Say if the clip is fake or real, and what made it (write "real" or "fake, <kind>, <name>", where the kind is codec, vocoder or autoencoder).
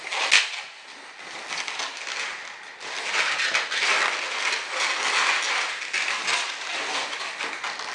real